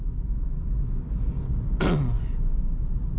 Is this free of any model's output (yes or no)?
yes